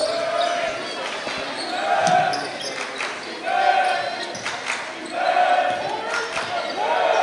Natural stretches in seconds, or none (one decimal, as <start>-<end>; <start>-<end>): 0.0-7.2